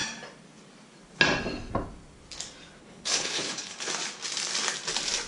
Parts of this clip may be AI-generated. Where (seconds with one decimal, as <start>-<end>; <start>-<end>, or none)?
2.8-3.9